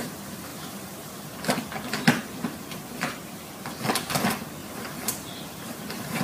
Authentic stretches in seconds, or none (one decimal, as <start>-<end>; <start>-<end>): 0.0-2.2; 3.3-4.6

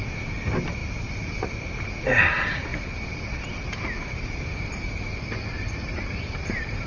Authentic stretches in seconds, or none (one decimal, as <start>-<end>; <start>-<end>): 0.0-0.8; 1.9-2.7

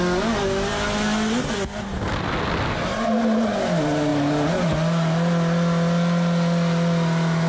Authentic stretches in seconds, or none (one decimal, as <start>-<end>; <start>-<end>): 0.0-7.5